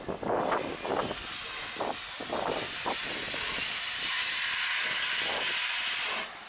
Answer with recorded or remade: recorded